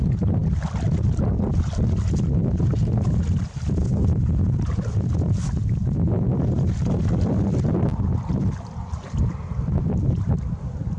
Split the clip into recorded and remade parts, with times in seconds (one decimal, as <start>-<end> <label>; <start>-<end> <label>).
0.0-0.4 recorded; 0.4-1.5 remade; 1.5-7.9 recorded; 7.9-10.5 remade; 10.5-11.0 recorded

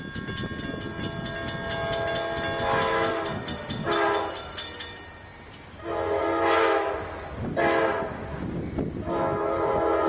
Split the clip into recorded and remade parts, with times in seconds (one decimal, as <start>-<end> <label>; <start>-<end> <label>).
0.0-10.1 recorded

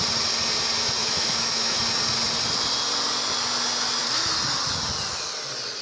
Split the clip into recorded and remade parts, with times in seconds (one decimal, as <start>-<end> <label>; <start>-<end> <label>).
0.0-1.0 recorded; 1.0-1.8 remade; 1.8-5.8 recorded

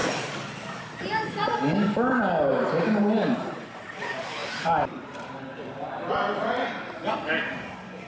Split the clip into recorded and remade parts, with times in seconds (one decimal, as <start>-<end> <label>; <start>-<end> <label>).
0.0-2.5 recorded; 2.5-3.8 remade; 3.8-4.4 recorded; 4.4-6.1 remade; 6.1-8.1 recorded

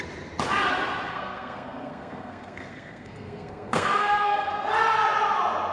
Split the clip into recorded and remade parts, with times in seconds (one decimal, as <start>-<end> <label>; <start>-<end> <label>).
0.0-1.1 recorded; 1.1-4.5 remade; 4.5-5.7 recorded